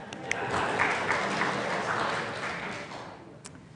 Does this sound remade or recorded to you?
recorded